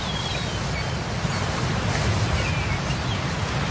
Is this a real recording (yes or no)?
yes